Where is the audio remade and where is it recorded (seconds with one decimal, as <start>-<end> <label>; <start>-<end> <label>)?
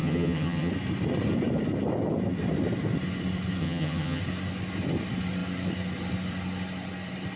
0.0-0.7 remade; 0.7-3.6 recorded; 3.6-4.2 remade; 4.2-7.4 recorded